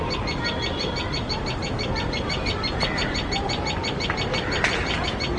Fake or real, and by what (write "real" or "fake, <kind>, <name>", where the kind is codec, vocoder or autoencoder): real